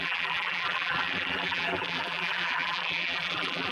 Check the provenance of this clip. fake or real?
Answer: fake